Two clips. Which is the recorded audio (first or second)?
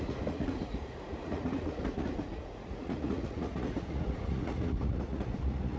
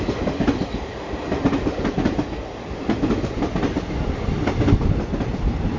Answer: second